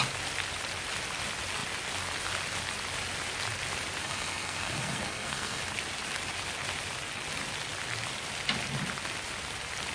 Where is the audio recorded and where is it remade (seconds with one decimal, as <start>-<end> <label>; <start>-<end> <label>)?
0.0-4.0 recorded; 4.0-5.6 remade; 5.6-9.9 recorded